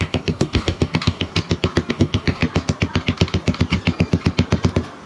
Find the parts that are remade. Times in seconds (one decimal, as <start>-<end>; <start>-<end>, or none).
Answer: 0.0-1.3; 1.9-2.4